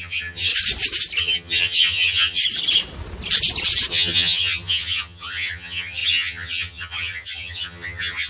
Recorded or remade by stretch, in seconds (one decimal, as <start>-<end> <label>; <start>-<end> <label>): 0.0-0.5 remade; 0.5-1.2 recorded; 1.2-2.4 remade; 2.4-3.9 recorded; 3.9-8.3 remade